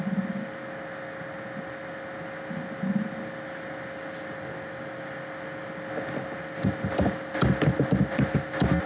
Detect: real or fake real